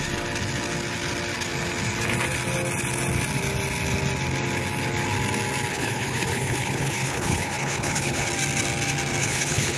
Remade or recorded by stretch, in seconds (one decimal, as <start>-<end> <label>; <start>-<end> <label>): 0.0-5.7 recorded; 5.7-8.3 remade; 8.3-9.2 recorded; 9.2-9.8 remade